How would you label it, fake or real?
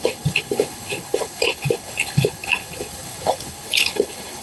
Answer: fake